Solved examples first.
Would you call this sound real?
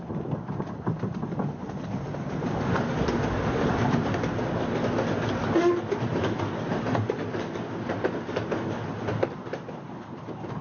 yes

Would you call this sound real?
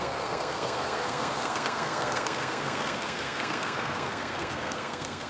no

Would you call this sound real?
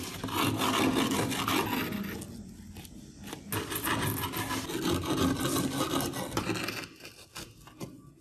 yes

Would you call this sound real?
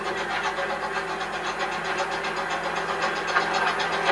yes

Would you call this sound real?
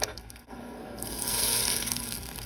no